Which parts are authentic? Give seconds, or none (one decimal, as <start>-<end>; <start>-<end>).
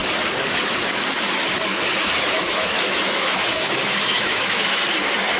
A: 0.0-1.7; 4.8-5.4